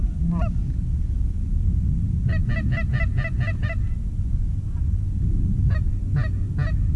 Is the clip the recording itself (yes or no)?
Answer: yes